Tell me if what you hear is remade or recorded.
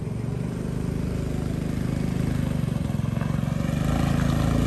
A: recorded